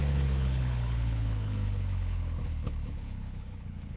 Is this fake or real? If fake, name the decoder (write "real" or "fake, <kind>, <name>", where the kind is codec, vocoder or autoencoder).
fake, codec, HILCodec